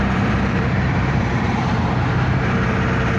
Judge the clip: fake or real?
fake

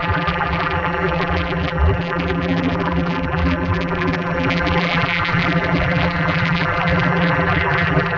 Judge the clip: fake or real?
fake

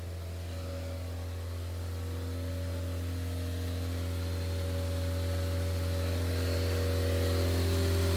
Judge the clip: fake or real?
real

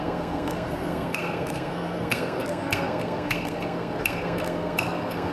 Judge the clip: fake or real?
fake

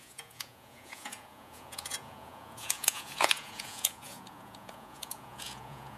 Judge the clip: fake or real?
fake